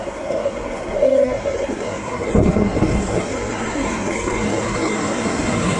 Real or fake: fake